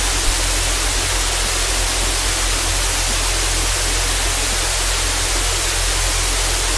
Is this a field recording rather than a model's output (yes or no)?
yes